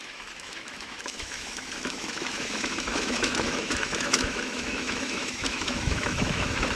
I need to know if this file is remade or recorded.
remade